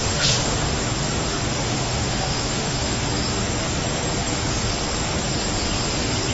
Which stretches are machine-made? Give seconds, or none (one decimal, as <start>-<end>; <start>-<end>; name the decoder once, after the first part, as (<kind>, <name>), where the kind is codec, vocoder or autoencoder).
0.0-0.6 (autoencoder, DAC-VAE); 1.6-3.0